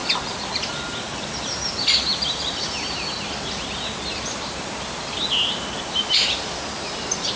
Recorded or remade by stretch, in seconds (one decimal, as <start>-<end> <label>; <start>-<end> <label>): 0.0-7.4 recorded